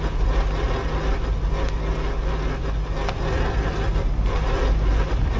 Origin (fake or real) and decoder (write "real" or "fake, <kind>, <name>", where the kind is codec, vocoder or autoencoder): real